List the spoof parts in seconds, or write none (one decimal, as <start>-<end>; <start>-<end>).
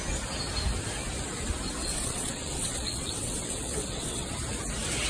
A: 1.8-4.3